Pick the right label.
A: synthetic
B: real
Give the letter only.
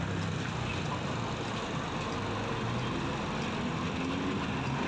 B